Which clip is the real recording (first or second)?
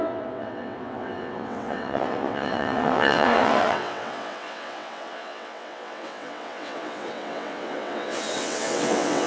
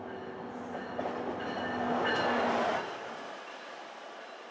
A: second